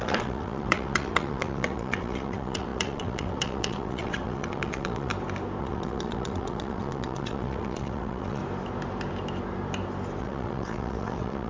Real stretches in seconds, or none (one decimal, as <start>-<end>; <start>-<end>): 5.1-5.6; 8.4-10.2